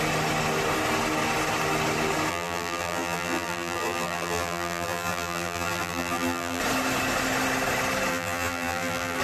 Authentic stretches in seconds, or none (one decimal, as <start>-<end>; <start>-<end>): 0.0-2.3; 6.6-8.1